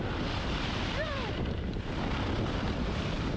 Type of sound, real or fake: fake